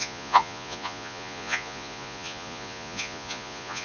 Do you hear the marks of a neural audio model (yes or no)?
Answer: yes